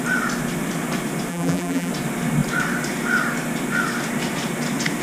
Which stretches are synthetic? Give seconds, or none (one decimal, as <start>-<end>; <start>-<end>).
1.3-1.9